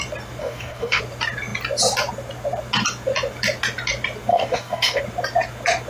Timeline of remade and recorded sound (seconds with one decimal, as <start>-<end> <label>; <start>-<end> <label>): 0.0-0.4 recorded; 0.4-1.0 remade; 1.0-4.3 recorded; 4.3-5.0 remade; 5.0-5.9 recorded